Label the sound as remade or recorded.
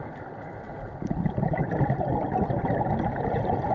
remade